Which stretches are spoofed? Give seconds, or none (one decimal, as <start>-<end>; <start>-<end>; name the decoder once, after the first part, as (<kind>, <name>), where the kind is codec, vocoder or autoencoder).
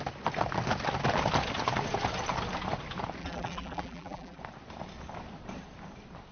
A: 3.2-4.4 (vocoder, BigVGAN v2)